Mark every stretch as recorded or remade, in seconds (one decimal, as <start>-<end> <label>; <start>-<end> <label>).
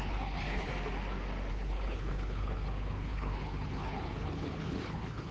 0.0-0.7 remade; 0.7-1.5 recorded; 1.5-5.3 remade